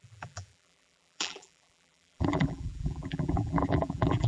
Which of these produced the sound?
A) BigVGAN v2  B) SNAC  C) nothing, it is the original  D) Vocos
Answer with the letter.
A